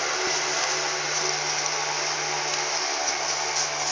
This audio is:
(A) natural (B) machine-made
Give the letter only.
A